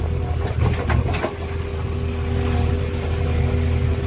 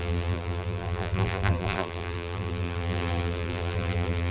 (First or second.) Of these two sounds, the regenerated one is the second